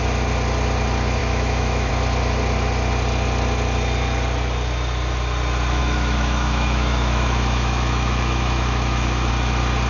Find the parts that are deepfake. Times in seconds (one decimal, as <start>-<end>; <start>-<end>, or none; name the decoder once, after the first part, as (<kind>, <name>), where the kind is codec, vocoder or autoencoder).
1.2-1.9 (autoencoder, DAC-VAE); 5.8-9.3